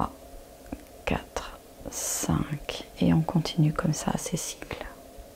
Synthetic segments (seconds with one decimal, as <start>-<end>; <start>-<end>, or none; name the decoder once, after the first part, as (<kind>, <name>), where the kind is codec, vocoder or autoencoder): 4.1-4.8 (autoencoder, DAC-VAE)